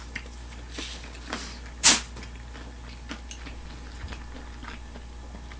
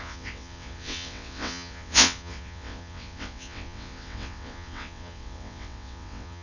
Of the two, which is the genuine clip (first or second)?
first